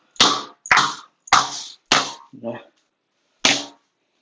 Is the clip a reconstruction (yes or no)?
no